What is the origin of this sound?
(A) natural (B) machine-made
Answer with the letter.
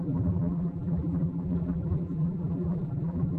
B